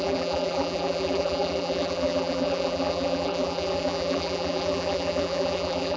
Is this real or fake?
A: fake